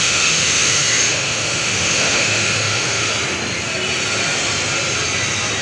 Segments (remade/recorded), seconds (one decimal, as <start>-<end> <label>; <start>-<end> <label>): 0.0-3.1 remade; 3.1-5.6 recorded